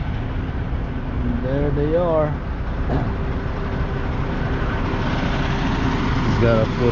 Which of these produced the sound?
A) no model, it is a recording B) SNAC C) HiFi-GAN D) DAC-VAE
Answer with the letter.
A